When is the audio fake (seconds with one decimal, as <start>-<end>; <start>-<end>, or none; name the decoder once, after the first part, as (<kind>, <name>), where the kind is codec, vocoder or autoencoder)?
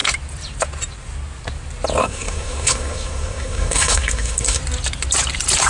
2.0-4.6 (codec, SNAC)